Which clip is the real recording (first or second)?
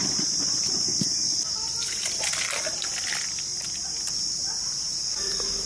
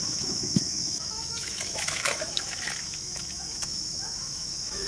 first